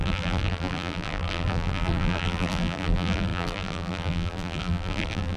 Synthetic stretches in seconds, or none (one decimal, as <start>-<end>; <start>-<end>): 0.0-5.4